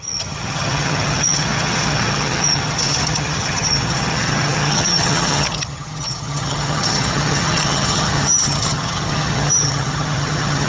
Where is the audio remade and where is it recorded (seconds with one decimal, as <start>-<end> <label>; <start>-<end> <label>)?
0.0-10.7 remade

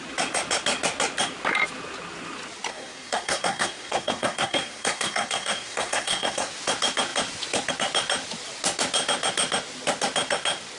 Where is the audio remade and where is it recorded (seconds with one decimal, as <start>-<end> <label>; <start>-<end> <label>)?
0.0-2.7 recorded; 2.7-6.5 remade; 6.5-10.8 recorded

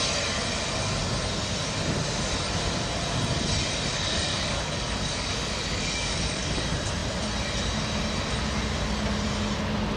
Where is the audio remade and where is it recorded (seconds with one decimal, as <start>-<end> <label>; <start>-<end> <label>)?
0.0-3.9 recorded; 3.9-6.6 remade; 6.6-10.0 recorded

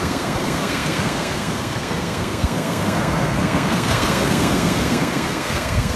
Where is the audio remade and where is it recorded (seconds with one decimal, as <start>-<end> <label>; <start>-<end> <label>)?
0.0-6.0 remade

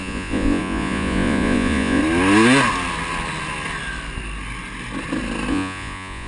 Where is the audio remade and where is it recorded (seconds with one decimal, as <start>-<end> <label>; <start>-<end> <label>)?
0.0-2.0 remade; 2.0-5.5 recorded; 5.5-6.3 remade

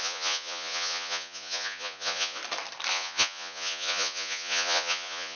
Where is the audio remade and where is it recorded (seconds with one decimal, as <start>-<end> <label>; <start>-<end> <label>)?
0.0-2.4 remade; 2.4-2.9 recorded; 2.9-5.4 remade